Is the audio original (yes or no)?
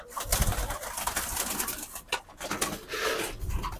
yes